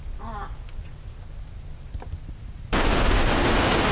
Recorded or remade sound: recorded